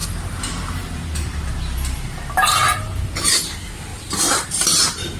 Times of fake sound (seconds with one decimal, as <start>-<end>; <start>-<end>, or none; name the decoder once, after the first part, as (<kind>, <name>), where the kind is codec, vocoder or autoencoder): 0.0-3.1 (vocoder, BigVGAN v2); 3.9-5.2